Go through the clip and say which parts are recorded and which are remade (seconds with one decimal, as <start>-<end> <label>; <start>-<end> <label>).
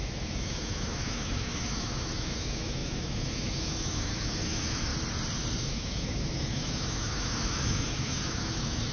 0.0-4.9 remade; 4.9-5.6 recorded; 5.6-8.9 remade